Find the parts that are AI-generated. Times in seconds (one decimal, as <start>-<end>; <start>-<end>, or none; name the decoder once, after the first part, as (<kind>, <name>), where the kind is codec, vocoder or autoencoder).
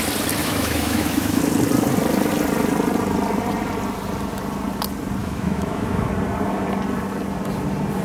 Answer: 0.4-1.4 (autoencoder, DAC-VAE); 5.2-6.1